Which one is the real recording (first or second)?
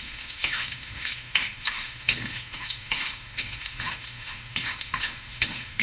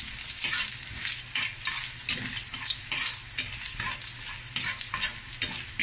second